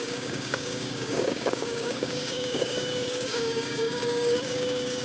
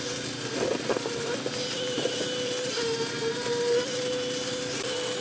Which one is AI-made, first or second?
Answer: first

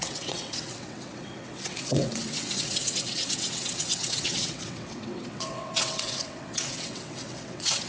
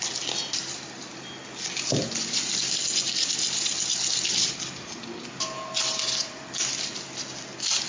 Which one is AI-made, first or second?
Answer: first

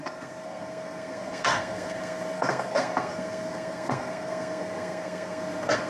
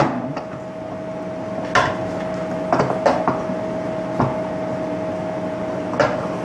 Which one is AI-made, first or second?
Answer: first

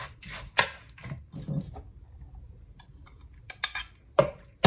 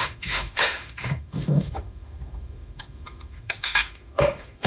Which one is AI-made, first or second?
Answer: second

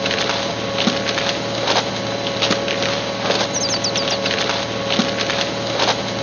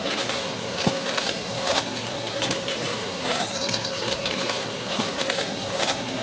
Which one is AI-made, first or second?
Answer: second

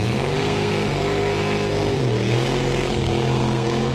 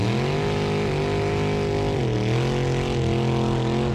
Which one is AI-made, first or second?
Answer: first